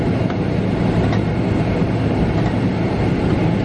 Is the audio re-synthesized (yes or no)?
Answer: no